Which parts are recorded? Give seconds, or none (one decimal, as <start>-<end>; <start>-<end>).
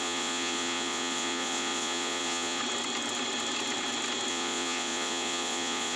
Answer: 2.6-4.3